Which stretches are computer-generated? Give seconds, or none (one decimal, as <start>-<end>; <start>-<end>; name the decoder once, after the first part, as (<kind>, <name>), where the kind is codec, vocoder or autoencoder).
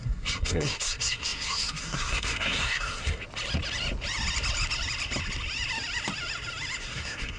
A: 0.0-3.2 (codec, SNAC); 6.8-7.4